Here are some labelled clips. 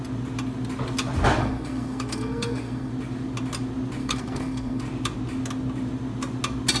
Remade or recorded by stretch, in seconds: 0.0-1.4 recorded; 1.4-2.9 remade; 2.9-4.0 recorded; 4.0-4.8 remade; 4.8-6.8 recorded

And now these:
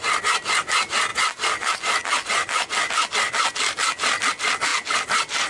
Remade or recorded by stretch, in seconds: 0.0-5.5 recorded

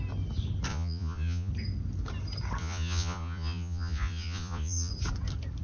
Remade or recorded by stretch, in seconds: 0.0-0.7 recorded; 0.7-1.5 remade; 1.5-2.6 recorded; 2.6-4.9 remade; 4.9-5.6 recorded